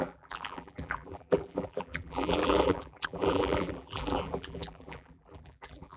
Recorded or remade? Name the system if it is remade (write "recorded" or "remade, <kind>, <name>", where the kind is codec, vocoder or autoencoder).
remade, vocoder, BigVGAN v2